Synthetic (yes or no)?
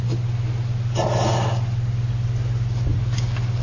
no